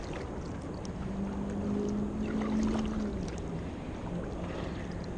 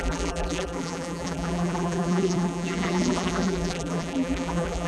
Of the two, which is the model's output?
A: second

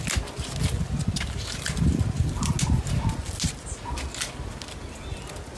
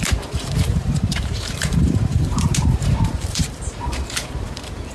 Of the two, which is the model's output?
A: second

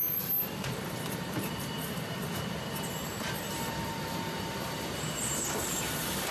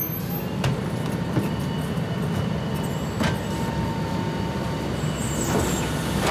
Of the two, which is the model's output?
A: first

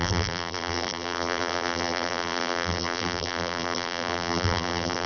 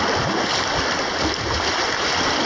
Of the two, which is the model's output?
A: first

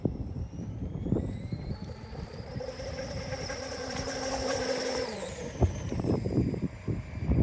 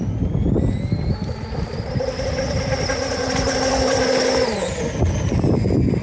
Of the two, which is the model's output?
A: first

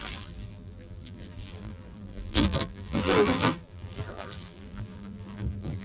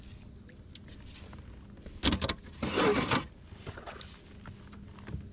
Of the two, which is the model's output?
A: first